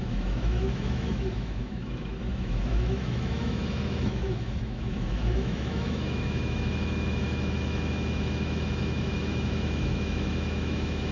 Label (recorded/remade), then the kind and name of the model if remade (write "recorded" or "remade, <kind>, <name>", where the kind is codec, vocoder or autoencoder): remade, autoencoder, DAC-VAE